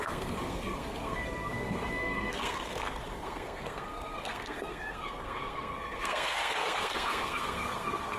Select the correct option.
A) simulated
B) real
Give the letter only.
A